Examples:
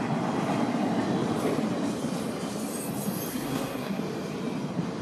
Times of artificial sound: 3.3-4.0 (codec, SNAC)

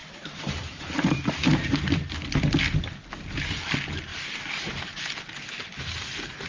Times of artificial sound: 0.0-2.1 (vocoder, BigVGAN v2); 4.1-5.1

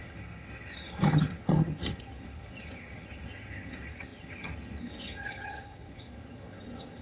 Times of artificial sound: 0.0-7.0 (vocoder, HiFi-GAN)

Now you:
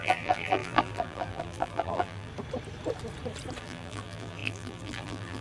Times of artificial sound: 0.0-2.3 (vocoder, BigVGAN v2); 3.6-5.4

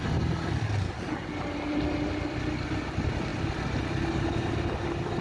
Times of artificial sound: none